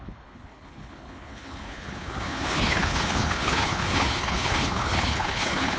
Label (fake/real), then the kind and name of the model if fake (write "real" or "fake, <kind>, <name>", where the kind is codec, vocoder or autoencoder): fake, codec, HILCodec